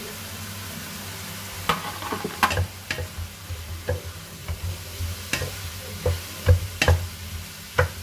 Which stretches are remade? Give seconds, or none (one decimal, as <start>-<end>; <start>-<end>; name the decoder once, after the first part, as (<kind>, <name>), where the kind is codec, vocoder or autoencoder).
4.4-5.0 (vocoder, BigVGAN v2)